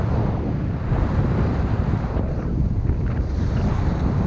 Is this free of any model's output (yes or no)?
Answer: yes